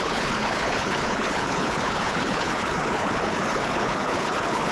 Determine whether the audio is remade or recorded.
remade